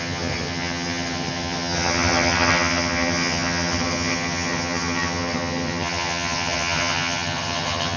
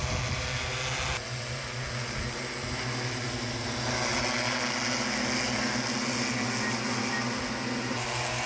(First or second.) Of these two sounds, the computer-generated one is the first